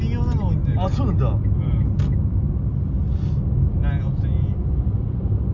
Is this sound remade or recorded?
recorded